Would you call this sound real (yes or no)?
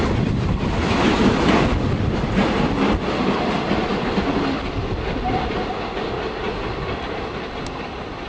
yes